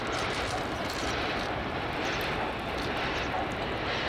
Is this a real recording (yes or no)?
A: yes